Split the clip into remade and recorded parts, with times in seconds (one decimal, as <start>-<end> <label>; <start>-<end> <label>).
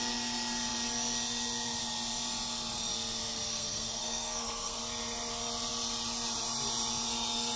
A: 0.0-3.5 recorded; 3.5-4.8 remade; 4.8-7.6 recorded